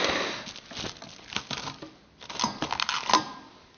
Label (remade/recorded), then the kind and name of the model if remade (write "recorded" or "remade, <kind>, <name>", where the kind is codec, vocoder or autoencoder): recorded